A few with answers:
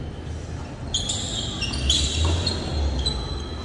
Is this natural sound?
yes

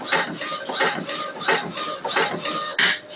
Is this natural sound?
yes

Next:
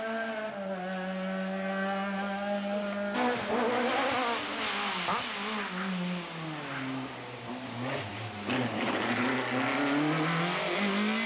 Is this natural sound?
yes